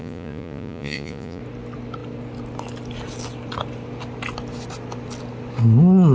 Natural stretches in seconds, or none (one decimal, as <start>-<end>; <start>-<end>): 1.4-6.1